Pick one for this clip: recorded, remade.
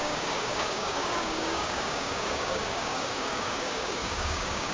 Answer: remade